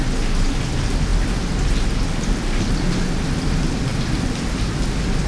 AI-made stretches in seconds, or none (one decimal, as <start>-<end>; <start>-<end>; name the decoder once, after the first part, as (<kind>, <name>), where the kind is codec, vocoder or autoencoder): none